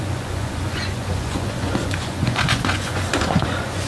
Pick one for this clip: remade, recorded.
remade